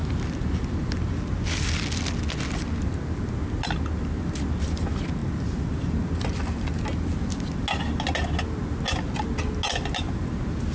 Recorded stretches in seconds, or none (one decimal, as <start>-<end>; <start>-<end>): 0.0-10.7